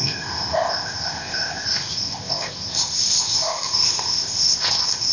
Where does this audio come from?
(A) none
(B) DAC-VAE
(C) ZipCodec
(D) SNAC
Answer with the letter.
C